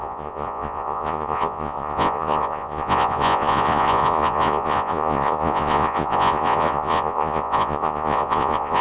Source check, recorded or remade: remade